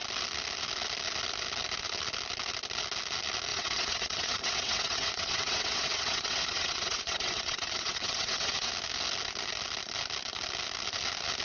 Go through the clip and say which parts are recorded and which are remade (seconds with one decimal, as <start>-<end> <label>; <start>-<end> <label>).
0.0-3.5 recorded; 3.5-8.7 remade; 8.7-11.4 recorded